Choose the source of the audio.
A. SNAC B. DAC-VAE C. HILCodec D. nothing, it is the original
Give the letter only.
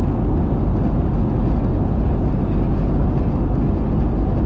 D